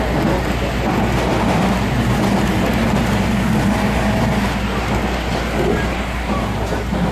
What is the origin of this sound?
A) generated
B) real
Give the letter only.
B